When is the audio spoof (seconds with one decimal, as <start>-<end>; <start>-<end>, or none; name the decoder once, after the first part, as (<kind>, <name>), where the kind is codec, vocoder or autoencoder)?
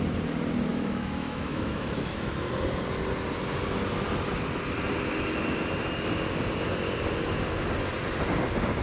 0.7-2.5 (autoencoder, DAC-VAE)